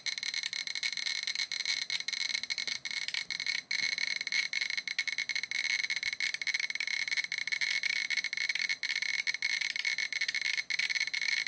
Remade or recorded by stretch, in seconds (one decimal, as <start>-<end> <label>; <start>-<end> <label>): 0.0-11.5 recorded